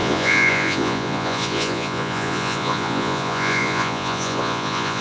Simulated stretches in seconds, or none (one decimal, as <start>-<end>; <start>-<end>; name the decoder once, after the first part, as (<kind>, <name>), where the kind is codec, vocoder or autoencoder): 0.0-5.0 (vocoder, Vocos)